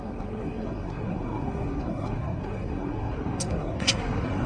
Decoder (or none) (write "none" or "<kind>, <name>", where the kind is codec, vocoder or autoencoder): codec, SNAC